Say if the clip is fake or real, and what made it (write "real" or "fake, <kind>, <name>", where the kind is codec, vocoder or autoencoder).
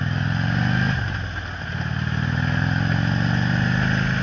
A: real